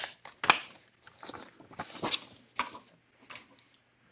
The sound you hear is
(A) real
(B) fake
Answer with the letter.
A